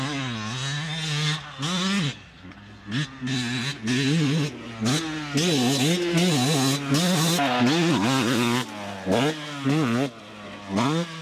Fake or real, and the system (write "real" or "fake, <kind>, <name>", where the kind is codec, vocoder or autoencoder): real